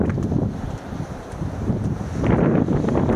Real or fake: fake